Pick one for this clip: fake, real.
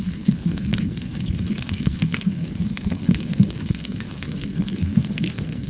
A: fake